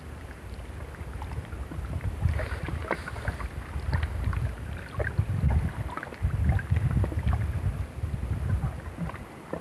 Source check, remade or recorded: recorded